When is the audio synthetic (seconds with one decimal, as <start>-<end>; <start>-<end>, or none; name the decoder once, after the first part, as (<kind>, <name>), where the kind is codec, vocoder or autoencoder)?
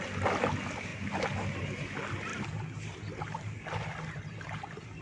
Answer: 2.3-4.6 (vocoder, BigVGAN v2)